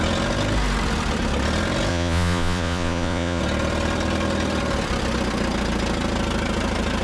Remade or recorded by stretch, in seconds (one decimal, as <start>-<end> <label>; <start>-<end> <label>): 0.0-1.9 recorded; 1.9-3.4 remade; 3.4-7.0 recorded